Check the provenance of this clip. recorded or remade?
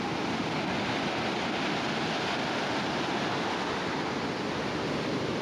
recorded